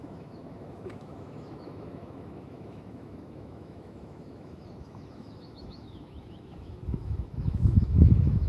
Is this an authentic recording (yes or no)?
no